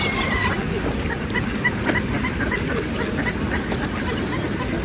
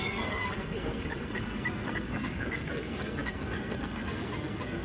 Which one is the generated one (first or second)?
second